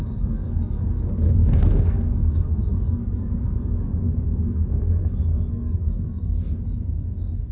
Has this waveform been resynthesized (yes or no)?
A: yes